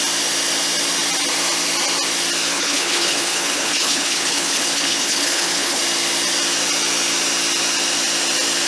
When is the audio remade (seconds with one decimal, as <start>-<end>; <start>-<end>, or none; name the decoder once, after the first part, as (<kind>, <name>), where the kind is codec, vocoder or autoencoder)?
2.5-5.8 (codec, HILCodec)